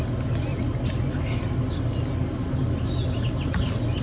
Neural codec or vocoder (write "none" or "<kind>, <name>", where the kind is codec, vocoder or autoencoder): none